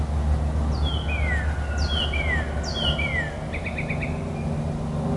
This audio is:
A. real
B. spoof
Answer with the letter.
A